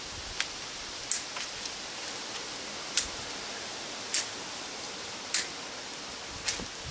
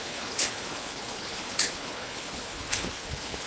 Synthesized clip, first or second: second